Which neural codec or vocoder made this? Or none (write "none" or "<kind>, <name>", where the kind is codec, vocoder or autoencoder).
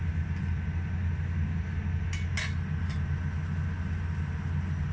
none